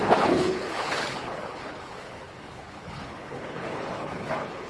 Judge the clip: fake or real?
fake